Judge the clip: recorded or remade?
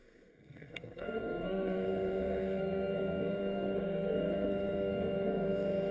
remade